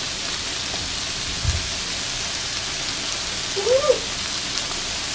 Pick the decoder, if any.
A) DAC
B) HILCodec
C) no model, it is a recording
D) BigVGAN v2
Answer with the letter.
C